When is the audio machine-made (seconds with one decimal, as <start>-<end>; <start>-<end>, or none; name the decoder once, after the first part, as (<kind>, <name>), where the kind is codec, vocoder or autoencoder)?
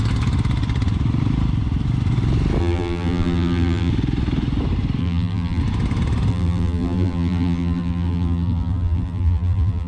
2.6-3.9 (vocoder, BigVGAN v2); 5.0-5.6; 6.3-9.9